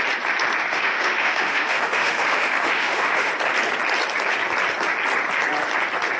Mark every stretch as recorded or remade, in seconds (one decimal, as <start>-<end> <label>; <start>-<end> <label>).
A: 0.0-0.7 recorded; 0.7-3.3 remade; 3.3-6.2 recorded